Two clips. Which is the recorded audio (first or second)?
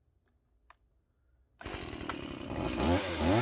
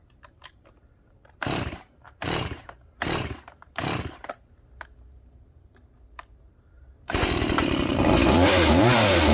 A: first